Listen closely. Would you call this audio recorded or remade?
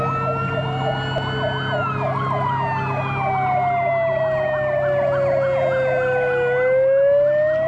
recorded